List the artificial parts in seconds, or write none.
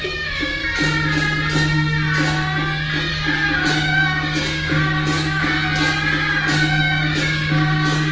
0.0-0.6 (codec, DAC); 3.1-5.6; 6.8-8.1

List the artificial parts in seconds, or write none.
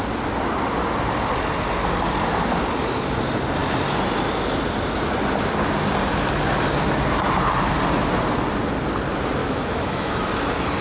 9.4-10.1 (autoencoder, DAC-VAE)